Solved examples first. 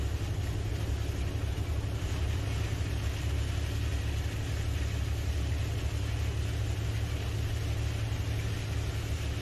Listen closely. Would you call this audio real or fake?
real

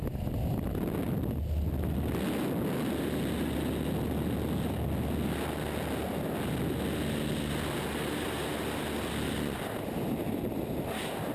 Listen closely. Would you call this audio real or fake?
real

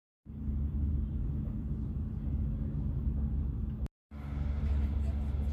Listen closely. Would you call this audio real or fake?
real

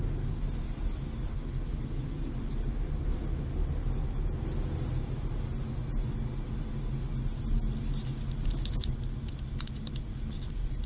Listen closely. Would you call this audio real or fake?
real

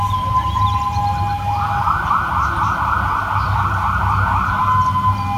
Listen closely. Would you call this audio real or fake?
real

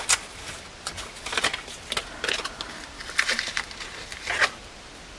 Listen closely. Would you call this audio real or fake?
real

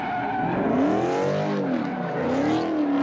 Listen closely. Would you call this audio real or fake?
real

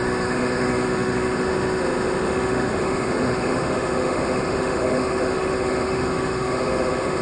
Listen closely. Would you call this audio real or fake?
fake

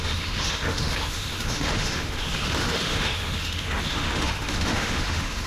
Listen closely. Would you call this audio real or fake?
fake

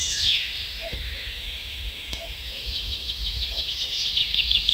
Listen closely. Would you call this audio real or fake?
fake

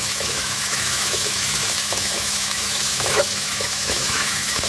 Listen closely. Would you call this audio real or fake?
fake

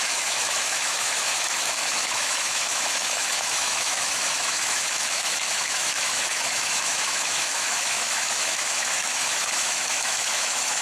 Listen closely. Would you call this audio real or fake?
fake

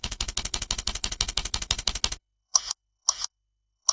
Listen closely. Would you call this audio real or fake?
fake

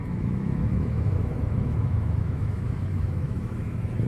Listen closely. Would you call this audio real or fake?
fake